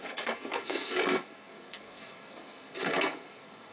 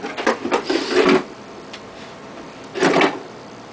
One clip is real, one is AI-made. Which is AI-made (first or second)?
first